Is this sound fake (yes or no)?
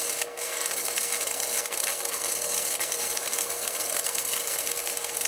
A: yes